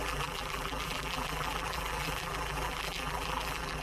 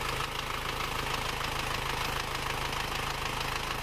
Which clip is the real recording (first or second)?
second